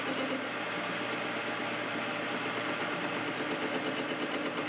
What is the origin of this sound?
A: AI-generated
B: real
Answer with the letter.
B